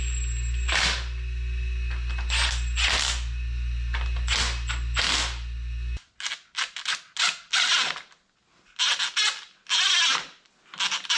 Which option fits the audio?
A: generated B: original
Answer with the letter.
B